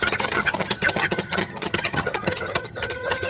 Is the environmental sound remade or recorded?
remade